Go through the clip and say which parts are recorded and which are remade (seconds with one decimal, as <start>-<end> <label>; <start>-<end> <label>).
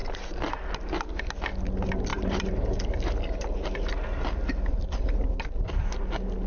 0.0-2.1 recorded; 2.1-6.0 remade; 6.0-6.5 recorded